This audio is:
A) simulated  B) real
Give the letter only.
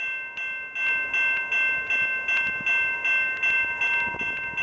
B